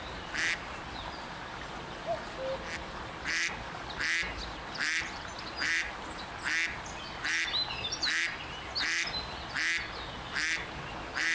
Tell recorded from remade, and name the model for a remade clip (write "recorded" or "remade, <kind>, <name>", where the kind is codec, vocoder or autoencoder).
recorded